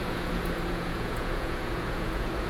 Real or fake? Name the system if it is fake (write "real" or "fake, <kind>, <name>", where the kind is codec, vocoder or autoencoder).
fake, vocoder, Vocos